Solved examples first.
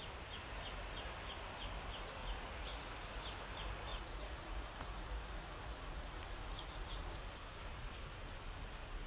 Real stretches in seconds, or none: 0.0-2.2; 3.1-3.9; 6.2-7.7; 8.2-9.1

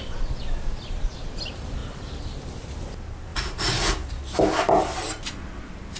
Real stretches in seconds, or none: 0.0-3.3; 3.9-6.0

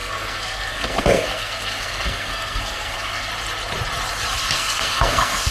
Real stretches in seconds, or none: 3.3-4.4

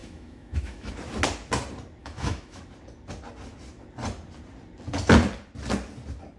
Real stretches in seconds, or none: 0.9-2.0; 2.6-6.4